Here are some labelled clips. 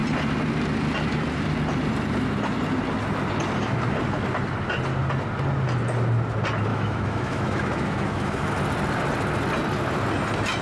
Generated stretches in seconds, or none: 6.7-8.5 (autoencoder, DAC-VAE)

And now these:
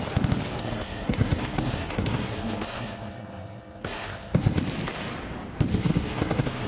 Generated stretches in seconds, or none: 0.6-4.6 (codec, SNAC); 5.7-6.7

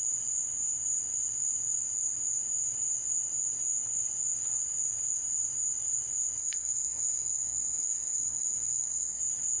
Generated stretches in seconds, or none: 6.4-9.2 (codec, SNAC)

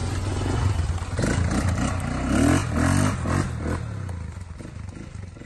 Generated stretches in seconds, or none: 0.0-0.7 (vocoder, Vocos)

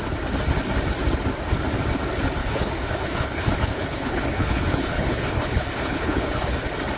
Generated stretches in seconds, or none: 2.4-6.6 (codec, HILCodec)

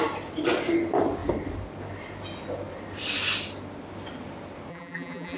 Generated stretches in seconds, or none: 4.7-5.4 (vocoder, BigVGAN v2)

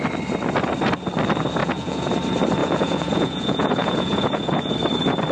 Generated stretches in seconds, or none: 1.6-2.1 (vocoder, Vocos); 2.6-4.7